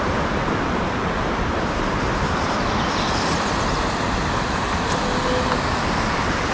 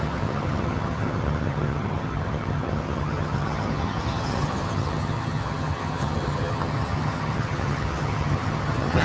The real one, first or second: first